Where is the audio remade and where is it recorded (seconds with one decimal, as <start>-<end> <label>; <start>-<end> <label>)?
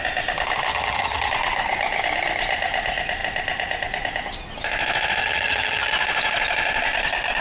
0.0-0.7 recorded; 0.7-1.3 remade; 1.3-5.2 recorded; 5.2-5.9 remade; 5.9-7.4 recorded